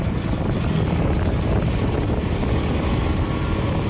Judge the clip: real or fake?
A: real